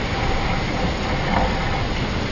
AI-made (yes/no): no